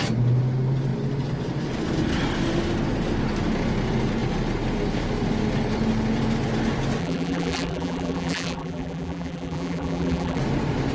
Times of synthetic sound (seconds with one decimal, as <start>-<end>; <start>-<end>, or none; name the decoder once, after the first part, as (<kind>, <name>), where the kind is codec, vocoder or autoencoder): 7.0-10.4 (vocoder, BigVGAN v2)